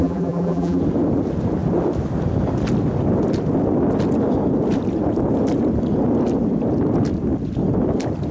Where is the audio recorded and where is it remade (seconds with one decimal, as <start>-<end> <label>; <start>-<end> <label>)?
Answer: 0.0-0.8 remade; 0.8-8.3 recorded